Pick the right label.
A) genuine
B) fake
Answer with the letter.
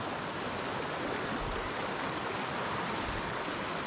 A